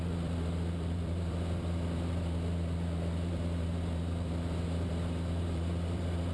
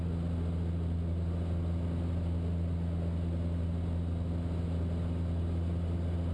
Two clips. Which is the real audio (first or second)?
second